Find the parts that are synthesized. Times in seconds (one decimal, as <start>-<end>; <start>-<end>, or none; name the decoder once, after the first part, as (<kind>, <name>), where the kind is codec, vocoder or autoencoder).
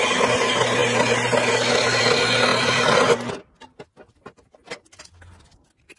2.5-3.3 (vocoder, BigVGAN v2)